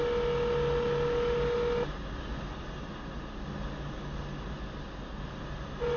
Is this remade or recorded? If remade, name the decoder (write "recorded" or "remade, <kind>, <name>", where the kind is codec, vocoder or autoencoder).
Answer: recorded